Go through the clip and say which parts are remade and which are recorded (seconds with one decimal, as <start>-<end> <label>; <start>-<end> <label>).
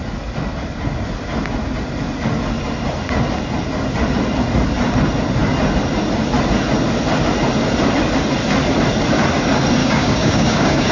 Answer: 0.0-9.8 recorded; 9.8-10.9 remade